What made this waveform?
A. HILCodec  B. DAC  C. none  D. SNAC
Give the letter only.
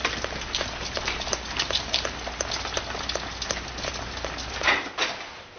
C